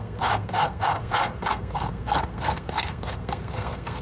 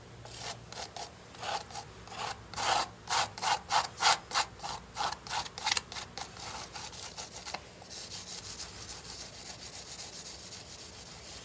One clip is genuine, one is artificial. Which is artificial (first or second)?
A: first